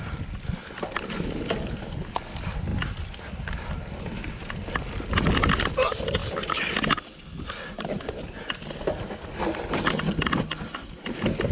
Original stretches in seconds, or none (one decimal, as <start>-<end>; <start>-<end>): 0.0-11.5